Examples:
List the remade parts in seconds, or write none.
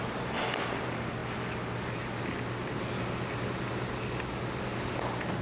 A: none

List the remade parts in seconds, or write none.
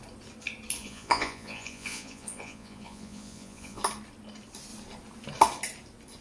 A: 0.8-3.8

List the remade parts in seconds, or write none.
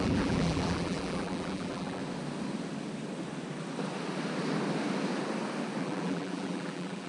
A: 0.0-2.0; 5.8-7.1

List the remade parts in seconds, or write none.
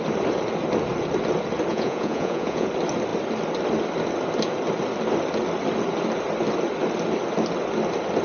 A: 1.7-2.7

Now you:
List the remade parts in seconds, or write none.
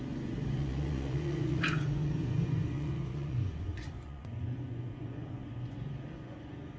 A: 0.0-6.8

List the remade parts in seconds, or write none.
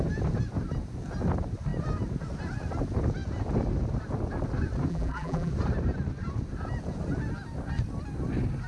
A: 4.9-5.5